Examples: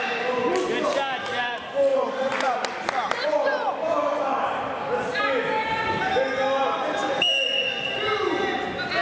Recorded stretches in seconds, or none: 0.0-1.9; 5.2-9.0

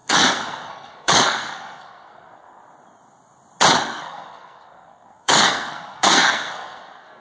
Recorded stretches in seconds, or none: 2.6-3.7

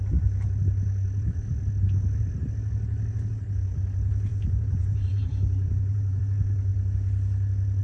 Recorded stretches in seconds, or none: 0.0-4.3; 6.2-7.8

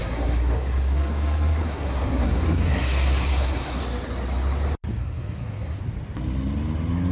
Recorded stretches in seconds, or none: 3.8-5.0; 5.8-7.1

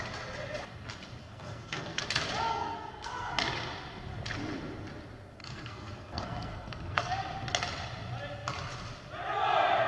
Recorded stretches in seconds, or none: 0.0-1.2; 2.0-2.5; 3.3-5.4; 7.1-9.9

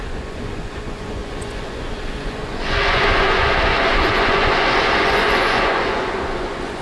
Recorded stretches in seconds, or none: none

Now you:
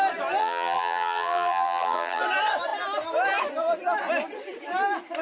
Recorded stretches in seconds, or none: 0.0-0.4; 2.2-5.2

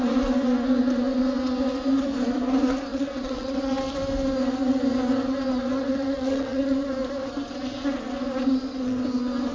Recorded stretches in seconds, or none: 0.0-2.9; 3.7-5.8; 6.6-9.5